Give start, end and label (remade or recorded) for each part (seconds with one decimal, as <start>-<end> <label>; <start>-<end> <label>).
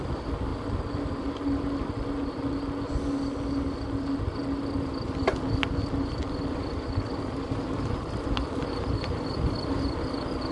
0.0-10.5 recorded